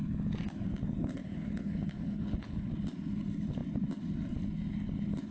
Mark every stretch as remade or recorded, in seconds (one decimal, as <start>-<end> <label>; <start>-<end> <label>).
0.0-1.2 recorded; 1.2-2.7 remade; 2.7-5.3 recorded